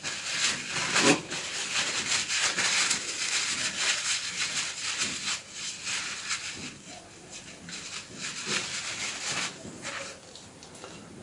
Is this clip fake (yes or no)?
no